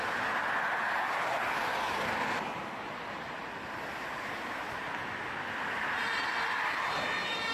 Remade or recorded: recorded